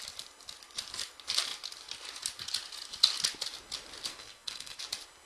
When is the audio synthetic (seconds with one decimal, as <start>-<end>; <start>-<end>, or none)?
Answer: 4.1-4.8